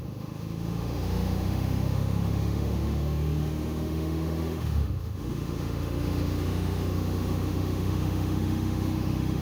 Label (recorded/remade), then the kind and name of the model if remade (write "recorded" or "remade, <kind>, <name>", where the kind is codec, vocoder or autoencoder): remade, autoencoder, DAC-VAE